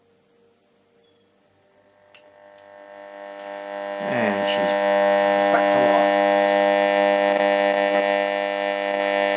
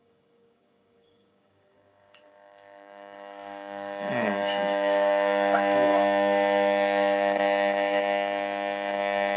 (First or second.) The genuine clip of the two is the first